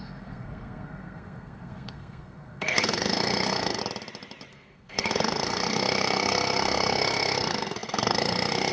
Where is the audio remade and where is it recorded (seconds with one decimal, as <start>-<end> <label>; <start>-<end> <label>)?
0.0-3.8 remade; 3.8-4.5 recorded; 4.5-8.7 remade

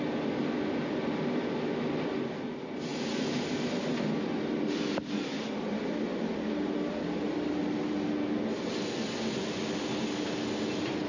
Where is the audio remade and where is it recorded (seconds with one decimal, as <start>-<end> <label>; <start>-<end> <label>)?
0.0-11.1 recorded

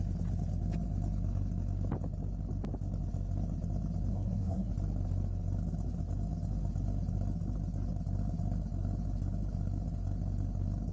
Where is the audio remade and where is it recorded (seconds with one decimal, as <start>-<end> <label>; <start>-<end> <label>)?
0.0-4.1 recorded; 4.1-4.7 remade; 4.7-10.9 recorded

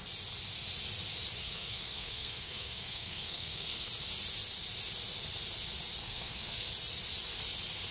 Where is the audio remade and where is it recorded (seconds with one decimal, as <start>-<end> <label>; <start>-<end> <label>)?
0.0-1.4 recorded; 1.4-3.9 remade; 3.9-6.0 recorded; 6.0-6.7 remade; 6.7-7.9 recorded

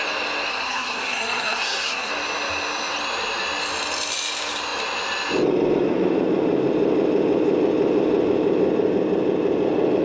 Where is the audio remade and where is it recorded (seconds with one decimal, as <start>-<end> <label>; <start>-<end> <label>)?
0.0-0.5 recorded; 0.5-2.1 remade; 2.1-10.0 recorded

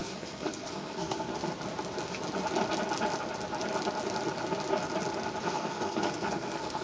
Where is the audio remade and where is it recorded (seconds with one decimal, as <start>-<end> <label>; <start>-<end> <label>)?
0.0-1.3 remade; 1.3-5.4 recorded; 5.4-6.8 remade

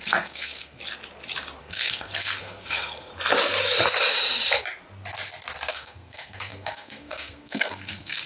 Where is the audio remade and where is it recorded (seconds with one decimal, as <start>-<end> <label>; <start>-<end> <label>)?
0.0-0.8 remade; 0.8-1.6 recorded; 1.6-3.1 remade; 3.1-5.7 recorded; 5.7-8.3 remade

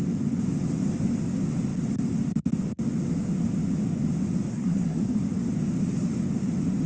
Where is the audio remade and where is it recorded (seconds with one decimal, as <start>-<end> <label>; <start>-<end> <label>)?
0.0-4.5 recorded; 4.5-5.2 remade; 5.2-6.9 recorded